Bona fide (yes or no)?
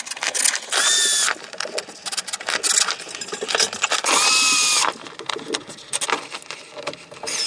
yes